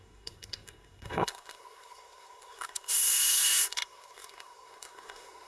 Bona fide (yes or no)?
no